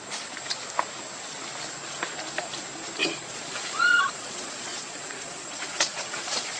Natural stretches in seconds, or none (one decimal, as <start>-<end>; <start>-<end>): 0.0-3.0

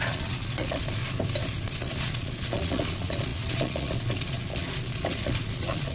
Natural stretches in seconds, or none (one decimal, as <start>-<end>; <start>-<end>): 1.0-1.8

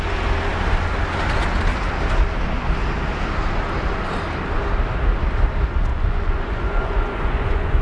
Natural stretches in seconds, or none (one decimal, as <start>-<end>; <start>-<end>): 0.0-5.9

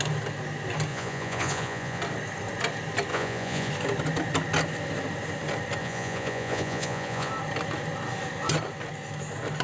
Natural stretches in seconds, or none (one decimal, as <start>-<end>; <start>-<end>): 0.0-0.9; 2.0-3.1; 3.7-5.8; 7.3-9.6

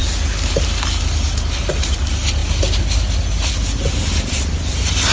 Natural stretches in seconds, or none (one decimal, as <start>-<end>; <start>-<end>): 0.0-5.1

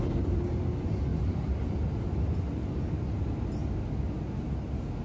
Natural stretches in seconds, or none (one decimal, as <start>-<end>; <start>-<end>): 0.0-5.0

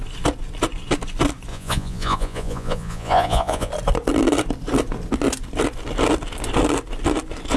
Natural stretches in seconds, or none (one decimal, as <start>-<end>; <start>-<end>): 0.0-1.5; 3.7-7.6